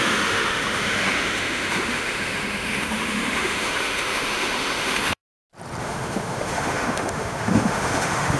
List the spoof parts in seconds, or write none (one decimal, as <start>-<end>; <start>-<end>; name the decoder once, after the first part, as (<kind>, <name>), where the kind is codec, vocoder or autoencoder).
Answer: 0.0-5.2 (autoencoder, DAC-VAE); 5.8-8.4